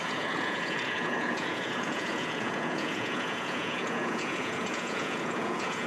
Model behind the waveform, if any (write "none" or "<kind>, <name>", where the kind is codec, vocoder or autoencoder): vocoder, Vocos